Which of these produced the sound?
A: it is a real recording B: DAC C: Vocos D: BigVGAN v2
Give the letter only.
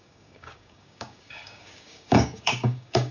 B